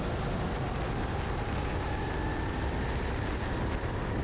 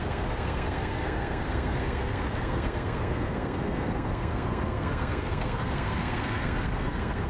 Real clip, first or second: first